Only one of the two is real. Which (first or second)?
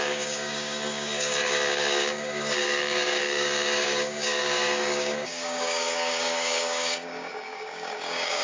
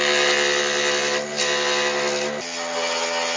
second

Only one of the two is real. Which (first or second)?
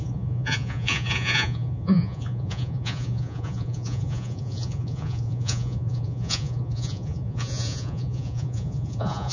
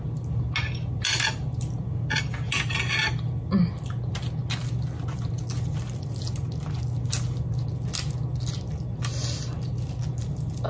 second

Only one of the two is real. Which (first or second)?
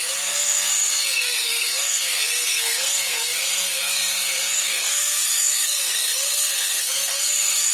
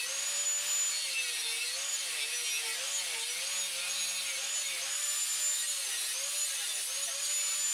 second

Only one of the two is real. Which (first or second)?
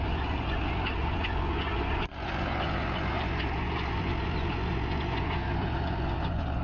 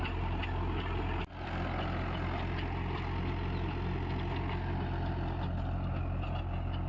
second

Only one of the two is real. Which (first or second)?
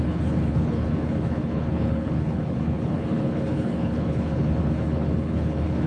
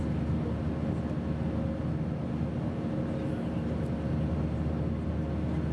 second